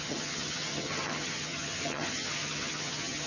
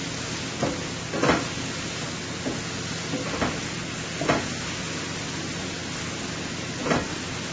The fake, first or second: first